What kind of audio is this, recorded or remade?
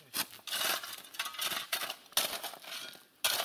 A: recorded